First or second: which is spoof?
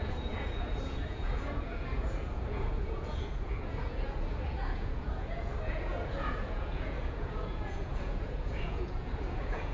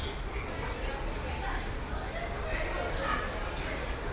first